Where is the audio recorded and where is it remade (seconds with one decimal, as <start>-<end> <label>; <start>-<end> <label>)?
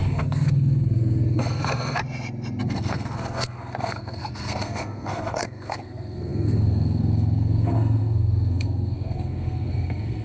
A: 0.0-2.0 remade; 2.0-2.6 recorded; 2.6-10.2 remade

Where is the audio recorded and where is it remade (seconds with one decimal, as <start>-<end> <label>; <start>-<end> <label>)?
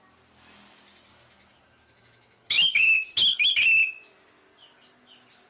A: 0.0-1.1 recorded; 1.1-3.5 remade; 3.5-5.5 recorded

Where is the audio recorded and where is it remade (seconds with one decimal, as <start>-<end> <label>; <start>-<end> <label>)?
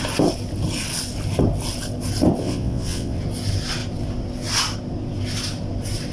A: 0.0-2.4 recorded; 2.4-3.2 remade; 3.2-6.1 recorded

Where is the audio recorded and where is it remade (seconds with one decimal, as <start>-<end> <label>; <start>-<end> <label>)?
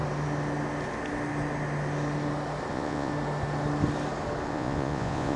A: 0.0-2.7 recorded; 2.7-3.1 remade; 3.1-4.5 recorded; 4.5-5.4 remade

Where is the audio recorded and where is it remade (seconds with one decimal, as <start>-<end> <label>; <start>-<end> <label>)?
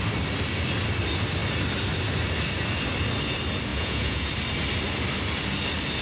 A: 0.0-3.7 recorded; 3.7-4.3 remade; 4.3-6.0 recorded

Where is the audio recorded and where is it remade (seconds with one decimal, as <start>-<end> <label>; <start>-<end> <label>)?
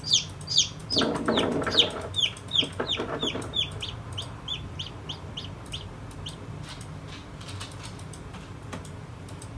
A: 0.0-9.6 recorded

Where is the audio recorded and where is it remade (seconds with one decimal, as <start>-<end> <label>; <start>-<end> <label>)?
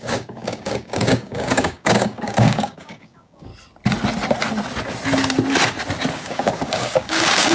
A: 0.0-3.5 remade; 3.5-6.1 recorded; 6.1-7.5 remade